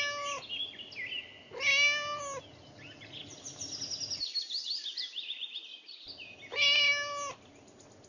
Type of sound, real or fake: real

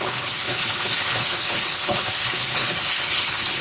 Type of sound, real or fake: fake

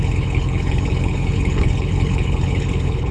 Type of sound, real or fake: fake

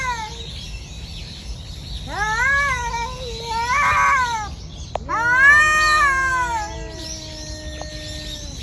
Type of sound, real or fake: real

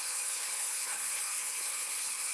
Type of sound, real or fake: fake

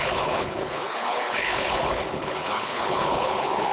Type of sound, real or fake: fake